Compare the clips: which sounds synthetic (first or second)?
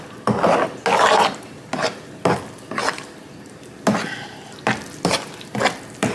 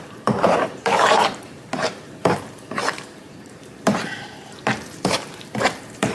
second